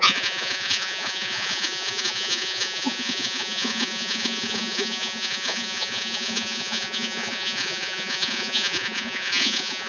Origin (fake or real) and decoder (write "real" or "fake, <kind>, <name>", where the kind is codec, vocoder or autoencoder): fake, vocoder, Vocos